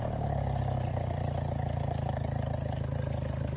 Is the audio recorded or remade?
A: recorded